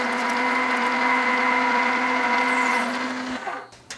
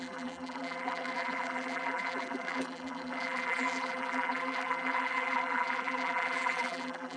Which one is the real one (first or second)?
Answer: first